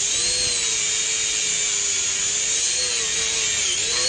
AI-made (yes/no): no